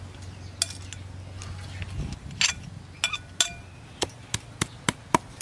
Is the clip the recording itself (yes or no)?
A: yes